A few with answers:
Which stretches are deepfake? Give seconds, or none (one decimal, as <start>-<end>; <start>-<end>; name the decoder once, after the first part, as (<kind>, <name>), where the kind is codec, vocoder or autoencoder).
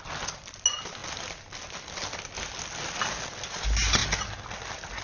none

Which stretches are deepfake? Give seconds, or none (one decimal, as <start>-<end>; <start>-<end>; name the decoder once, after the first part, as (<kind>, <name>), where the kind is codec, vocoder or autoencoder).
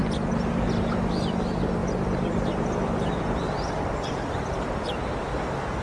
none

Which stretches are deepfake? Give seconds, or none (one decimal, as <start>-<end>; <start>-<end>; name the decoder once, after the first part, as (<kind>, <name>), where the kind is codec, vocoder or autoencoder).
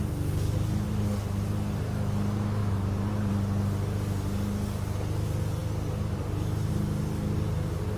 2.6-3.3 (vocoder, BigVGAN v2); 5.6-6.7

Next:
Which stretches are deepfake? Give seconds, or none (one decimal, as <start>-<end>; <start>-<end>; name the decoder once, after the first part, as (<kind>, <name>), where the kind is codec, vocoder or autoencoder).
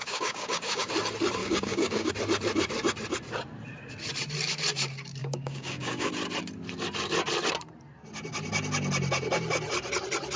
0.0-0.9 (codec, DAC); 1.4-2.1; 5.2-6.1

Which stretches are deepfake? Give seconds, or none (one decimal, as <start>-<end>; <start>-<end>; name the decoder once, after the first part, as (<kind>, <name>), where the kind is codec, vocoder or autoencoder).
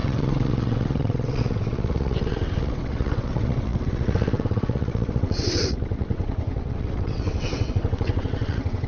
0.0-8.9 (vocoder, WaveNeXt)